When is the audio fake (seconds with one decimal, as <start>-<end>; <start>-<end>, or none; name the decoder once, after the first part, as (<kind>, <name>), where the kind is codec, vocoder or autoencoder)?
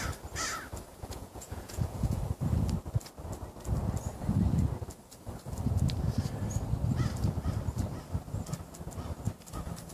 0.9-2.2 (vocoder, Vocos)